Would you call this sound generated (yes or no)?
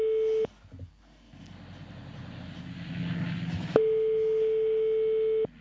no